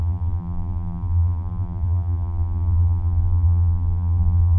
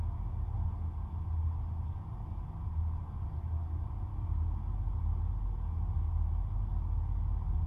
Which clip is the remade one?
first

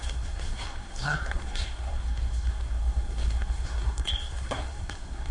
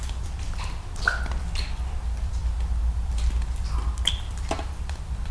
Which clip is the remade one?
first